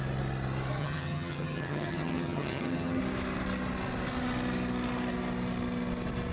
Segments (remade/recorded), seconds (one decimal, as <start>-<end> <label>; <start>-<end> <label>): 0.0-0.8 recorded; 0.8-3.0 remade; 3.0-6.3 recorded